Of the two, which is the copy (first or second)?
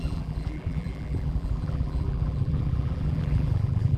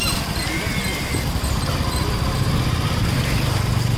first